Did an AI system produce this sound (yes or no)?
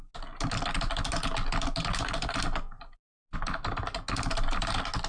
no